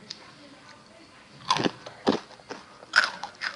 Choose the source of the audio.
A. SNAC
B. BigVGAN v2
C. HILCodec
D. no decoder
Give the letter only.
B